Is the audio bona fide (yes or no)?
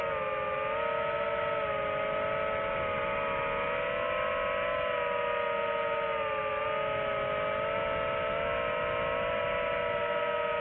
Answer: yes